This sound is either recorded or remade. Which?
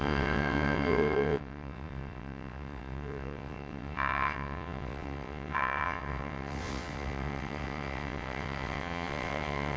remade